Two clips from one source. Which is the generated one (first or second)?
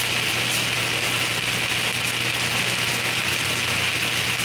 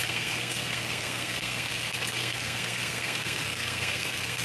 second